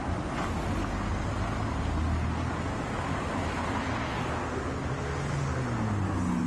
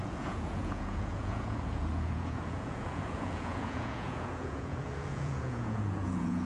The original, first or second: first